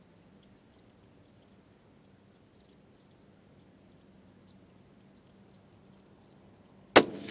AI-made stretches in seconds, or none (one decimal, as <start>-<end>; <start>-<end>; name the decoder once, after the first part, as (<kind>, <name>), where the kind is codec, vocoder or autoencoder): none